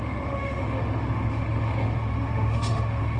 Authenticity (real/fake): fake